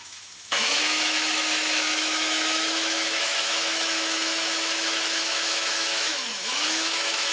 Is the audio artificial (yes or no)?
yes